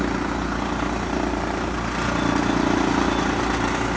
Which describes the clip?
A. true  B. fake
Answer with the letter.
A